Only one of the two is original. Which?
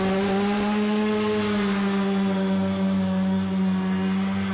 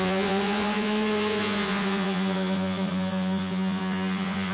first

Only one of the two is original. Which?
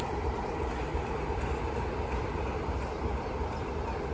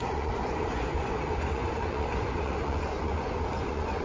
first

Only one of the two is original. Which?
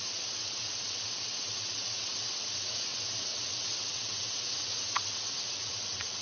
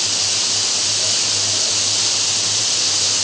second